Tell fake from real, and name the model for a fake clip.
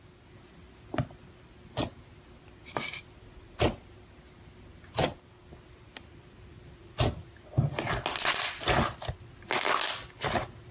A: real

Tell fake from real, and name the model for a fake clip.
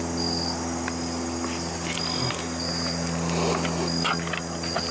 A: real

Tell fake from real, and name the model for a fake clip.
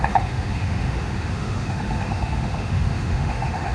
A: fake, autoencoder, DAC-VAE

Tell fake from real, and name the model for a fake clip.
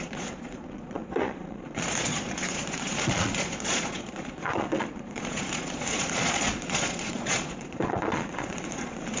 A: fake, vocoder, Vocos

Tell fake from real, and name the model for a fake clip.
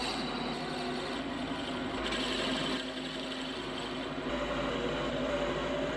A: real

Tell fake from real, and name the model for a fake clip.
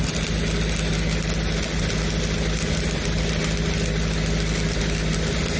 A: real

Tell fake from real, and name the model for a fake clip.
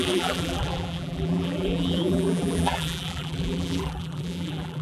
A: fake, vocoder, BigVGAN v2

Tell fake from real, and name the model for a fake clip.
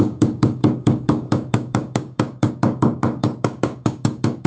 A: fake, codec, DAC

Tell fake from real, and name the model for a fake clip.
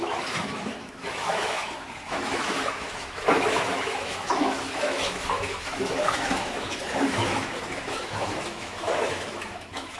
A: fake, autoencoder, DAC-VAE